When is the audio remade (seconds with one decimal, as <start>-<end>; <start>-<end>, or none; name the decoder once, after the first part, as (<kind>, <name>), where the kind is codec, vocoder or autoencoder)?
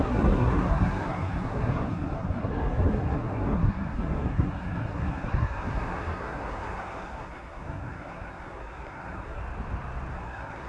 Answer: 0.0-9.4 (codec, SNAC); 10.1-10.7